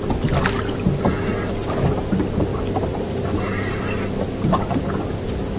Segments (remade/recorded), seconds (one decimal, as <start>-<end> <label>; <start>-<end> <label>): 0.0-2.5 recorded; 2.5-3.4 remade; 3.4-5.6 recorded